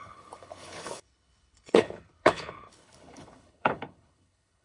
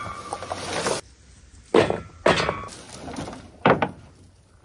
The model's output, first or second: first